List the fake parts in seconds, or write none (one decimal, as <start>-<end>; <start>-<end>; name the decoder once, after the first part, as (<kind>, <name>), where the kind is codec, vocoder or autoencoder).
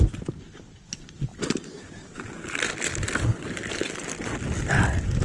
none